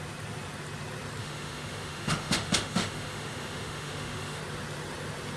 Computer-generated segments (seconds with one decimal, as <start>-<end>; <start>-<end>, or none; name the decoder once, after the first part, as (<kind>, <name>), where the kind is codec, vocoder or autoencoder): 1.2-4.4 (autoencoder, DAC-VAE)